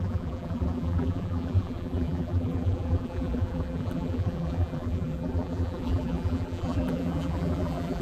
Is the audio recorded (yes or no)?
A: no